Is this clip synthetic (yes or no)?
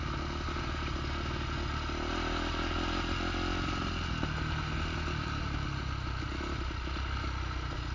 no